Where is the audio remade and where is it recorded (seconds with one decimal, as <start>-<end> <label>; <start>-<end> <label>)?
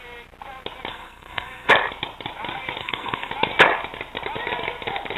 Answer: 0.0-0.9 recorded; 0.9-1.7 remade; 1.7-2.8 recorded; 2.8-3.3 remade; 3.3-5.2 recorded